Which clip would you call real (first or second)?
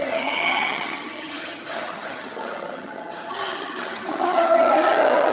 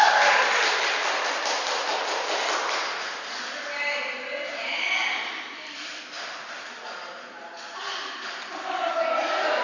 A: second